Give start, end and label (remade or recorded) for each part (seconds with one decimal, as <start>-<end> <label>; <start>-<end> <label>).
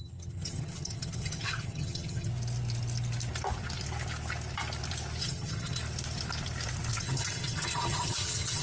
0.0-2.3 remade; 2.3-5.2 recorded; 5.2-5.8 remade; 5.8-7.0 recorded; 7.0-8.6 remade